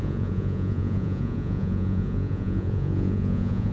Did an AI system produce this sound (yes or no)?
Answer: yes